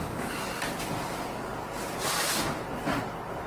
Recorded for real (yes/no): yes